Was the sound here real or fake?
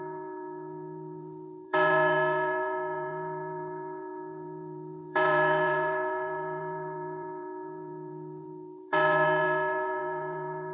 fake